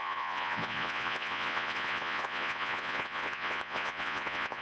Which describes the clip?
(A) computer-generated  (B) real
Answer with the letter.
A